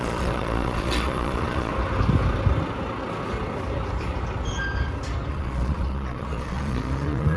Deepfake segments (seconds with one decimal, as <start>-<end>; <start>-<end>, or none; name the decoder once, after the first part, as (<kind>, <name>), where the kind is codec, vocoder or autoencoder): 0.0-1.7 (vocoder, Vocos); 5.3-7.4